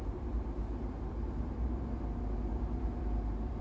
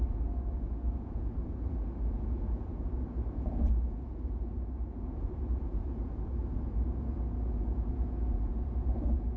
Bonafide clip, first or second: first